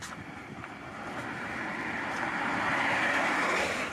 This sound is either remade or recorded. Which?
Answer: recorded